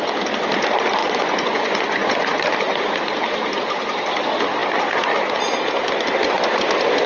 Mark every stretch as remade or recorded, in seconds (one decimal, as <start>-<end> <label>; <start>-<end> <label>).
0.0-1.0 recorded; 1.0-2.4 remade; 2.4-7.1 recorded